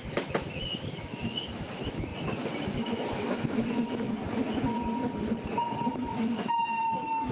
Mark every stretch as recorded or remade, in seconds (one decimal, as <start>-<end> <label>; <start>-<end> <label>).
0.0-2.1 remade; 2.1-2.6 recorded; 2.6-4.2 remade; 4.2-5.9 recorded; 5.9-7.3 remade